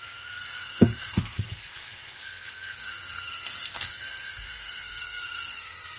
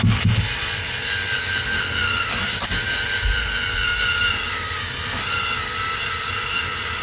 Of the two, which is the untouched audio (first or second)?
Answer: second